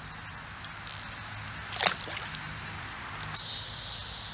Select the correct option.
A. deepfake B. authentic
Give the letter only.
B